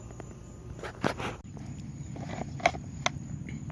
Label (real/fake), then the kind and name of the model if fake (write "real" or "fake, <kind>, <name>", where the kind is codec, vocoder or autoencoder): real